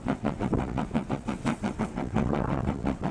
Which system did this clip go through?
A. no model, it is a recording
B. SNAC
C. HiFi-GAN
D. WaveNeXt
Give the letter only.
D